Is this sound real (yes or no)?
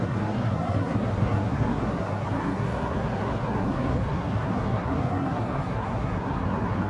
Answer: no